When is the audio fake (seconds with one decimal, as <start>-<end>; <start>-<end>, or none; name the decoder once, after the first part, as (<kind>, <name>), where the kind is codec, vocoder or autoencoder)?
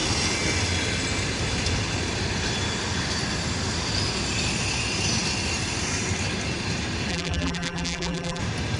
7.1-8.4 (vocoder, BigVGAN v2)